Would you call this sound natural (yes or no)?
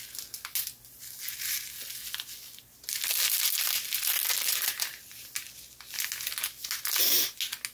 yes